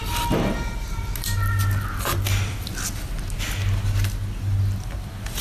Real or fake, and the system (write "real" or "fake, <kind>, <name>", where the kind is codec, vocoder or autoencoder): real